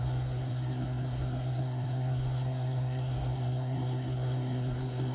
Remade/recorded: remade